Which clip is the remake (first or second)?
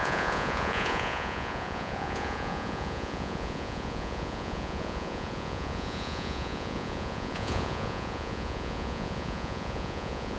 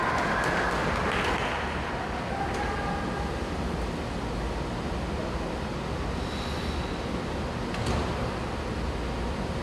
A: first